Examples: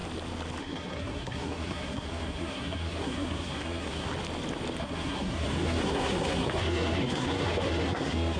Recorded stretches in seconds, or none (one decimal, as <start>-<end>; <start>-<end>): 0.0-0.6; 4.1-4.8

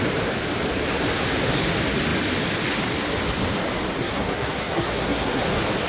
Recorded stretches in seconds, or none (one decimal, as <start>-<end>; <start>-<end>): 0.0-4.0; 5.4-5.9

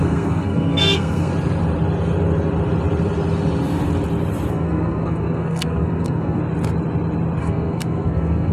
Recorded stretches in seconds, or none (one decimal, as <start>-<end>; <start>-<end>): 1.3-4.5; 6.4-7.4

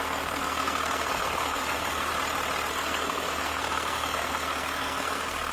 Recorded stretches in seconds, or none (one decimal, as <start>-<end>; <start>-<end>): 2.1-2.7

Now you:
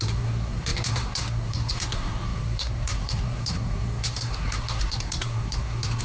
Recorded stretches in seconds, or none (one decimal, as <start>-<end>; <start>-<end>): none